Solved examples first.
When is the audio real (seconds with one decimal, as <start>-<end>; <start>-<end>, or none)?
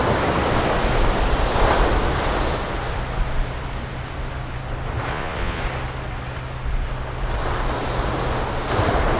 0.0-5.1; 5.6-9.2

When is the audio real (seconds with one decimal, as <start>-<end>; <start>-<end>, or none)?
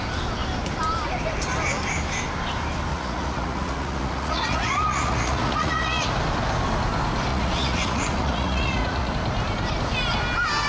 0.0-2.9; 6.1-7.3; 9.1-10.7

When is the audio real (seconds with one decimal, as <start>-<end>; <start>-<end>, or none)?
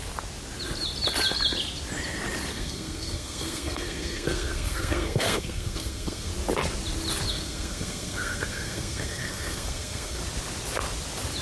0.0-2.5; 6.3-7.3; 10.2-11.4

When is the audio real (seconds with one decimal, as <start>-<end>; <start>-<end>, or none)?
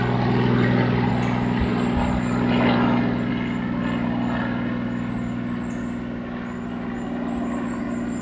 0.0-8.2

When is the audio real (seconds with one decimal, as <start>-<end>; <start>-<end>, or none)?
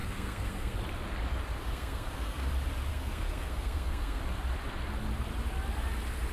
0.8-1.6; 2.5-2.9; 4.2-6.3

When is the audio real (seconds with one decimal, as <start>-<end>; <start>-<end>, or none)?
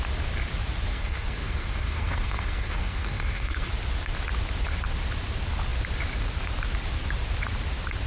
0.0-0.9; 3.7-8.1